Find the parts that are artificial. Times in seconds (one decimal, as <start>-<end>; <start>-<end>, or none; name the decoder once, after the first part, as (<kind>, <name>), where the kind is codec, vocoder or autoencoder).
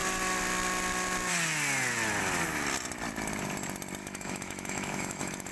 4.0-5.5 (autoencoder, DAC-VAE)